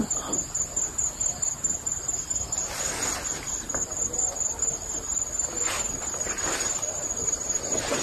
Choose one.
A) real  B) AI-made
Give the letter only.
A